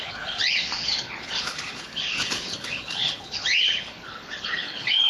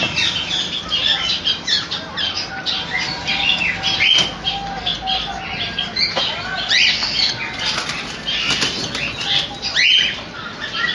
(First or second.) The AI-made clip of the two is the first